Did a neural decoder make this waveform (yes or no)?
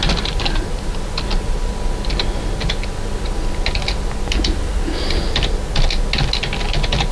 no